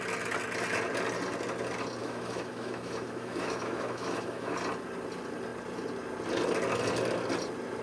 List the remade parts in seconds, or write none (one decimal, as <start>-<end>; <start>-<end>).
2.0-4.5